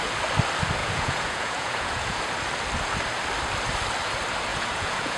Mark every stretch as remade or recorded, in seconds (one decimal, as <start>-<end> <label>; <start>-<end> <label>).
0.0-0.8 recorded; 0.8-2.2 remade; 2.2-4.5 recorded; 4.5-5.2 remade